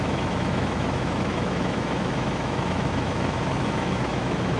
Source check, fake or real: fake